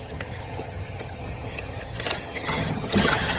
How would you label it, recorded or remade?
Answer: remade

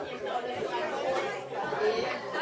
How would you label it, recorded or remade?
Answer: remade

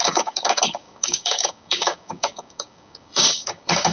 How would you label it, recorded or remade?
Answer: remade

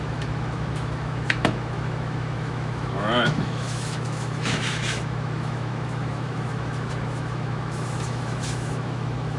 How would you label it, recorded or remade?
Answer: remade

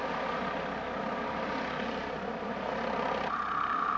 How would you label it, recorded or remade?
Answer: recorded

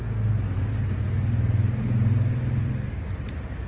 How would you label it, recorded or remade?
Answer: recorded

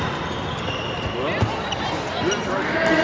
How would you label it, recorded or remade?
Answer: recorded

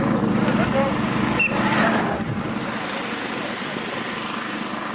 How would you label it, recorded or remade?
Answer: recorded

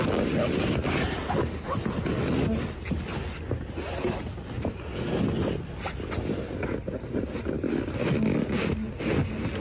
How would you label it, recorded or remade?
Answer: recorded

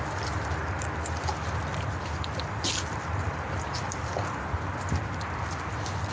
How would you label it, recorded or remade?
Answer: remade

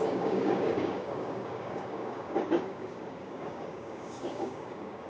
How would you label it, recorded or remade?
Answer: remade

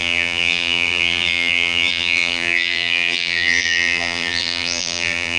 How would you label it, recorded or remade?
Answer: remade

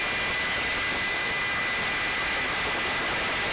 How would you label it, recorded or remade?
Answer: recorded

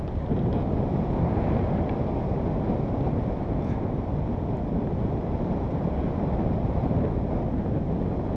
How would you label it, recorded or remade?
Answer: recorded